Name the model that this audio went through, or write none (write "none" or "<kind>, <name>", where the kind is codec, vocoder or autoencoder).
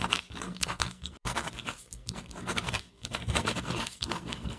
codec, SNAC